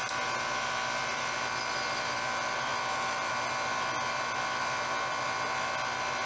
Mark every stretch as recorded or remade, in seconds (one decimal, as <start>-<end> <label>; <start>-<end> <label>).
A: 0.0-6.3 recorded